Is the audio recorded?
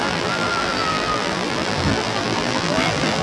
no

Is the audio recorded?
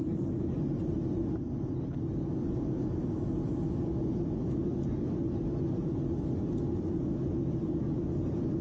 yes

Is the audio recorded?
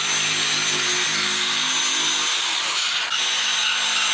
yes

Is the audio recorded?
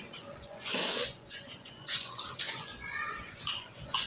no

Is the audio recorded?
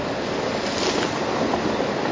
yes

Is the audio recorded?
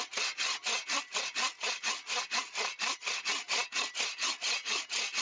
yes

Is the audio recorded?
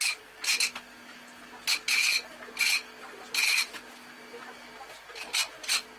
yes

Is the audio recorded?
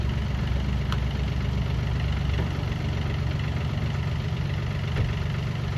yes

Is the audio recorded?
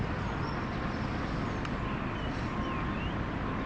yes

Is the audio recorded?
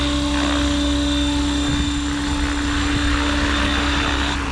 yes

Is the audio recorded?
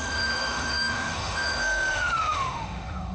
no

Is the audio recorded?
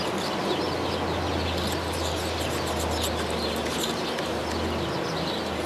yes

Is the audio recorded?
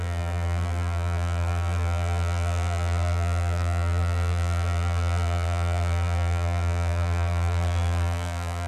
no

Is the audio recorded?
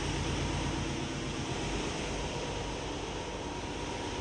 yes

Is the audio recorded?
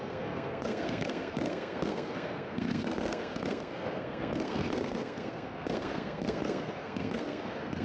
no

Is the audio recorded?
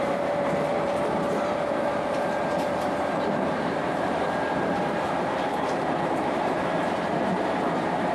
no